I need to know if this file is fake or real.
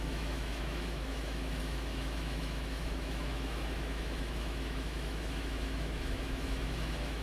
fake